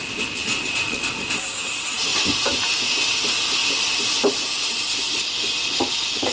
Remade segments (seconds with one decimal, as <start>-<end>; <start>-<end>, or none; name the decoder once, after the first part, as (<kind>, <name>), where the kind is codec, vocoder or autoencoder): 0.4-1.1 (vocoder, Vocos)